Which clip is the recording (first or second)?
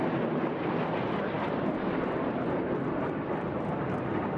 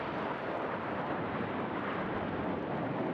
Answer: first